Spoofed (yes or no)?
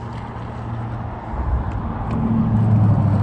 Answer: no